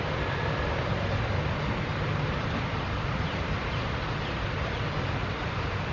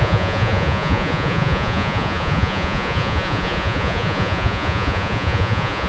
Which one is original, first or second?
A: first